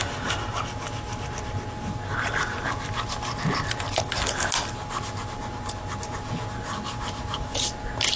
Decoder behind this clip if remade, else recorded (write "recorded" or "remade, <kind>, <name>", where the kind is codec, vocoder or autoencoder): recorded